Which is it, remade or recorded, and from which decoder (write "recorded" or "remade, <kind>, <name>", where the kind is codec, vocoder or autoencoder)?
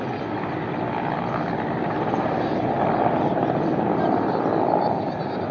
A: recorded